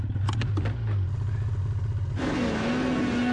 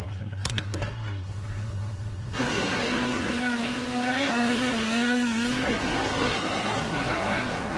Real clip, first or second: first